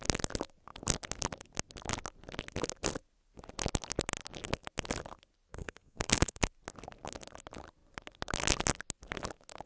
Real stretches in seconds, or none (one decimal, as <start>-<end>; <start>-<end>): 0.0-5.5; 6.5-9.7